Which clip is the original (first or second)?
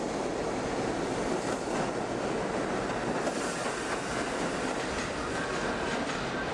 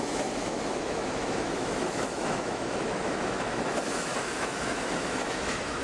first